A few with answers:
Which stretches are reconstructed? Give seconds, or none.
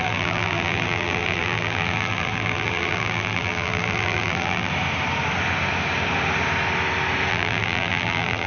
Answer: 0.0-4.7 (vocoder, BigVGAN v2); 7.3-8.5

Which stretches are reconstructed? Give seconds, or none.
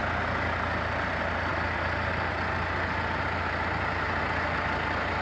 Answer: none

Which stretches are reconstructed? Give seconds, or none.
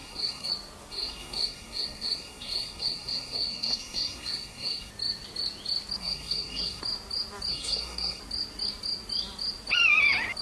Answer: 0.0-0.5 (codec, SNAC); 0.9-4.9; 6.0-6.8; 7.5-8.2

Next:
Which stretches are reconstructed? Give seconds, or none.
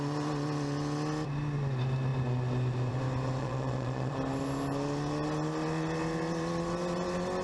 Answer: 3.4-4.1 (vocoder, Vocos)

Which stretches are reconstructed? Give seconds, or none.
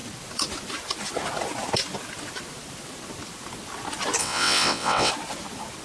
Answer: 4.2-5.1 (vocoder, WaveNeXt)